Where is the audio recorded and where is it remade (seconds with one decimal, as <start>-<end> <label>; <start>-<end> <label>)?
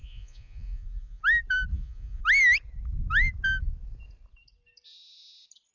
0.0-1.2 remade; 1.2-1.7 recorded; 1.7-2.2 remade; 2.2-5.7 recorded